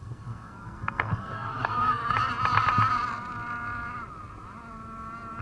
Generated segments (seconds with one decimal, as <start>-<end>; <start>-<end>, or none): 0.0-2.0